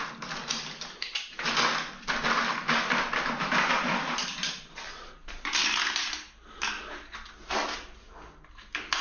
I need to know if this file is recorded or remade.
recorded